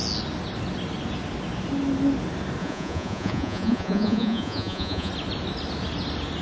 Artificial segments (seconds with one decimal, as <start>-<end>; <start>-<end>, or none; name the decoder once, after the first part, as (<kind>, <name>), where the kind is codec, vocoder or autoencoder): 2.6-5.1 (vocoder, Vocos)